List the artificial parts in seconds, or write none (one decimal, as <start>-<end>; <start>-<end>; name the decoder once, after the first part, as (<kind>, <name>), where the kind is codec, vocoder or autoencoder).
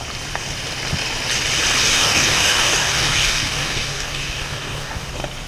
1.8-5.1 (codec, DAC)